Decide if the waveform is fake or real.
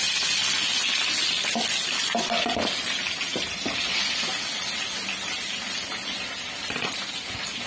real